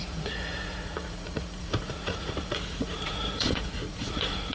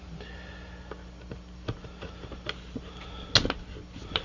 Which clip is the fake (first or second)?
first